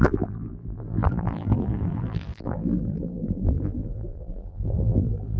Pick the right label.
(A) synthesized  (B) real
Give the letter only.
A